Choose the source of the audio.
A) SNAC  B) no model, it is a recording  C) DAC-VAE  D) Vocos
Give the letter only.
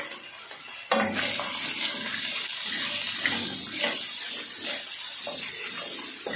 B